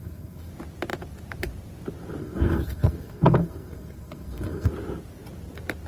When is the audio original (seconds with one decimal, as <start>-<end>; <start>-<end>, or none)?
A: 0.5-2.2; 4.7-5.9